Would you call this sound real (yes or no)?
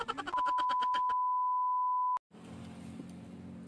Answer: yes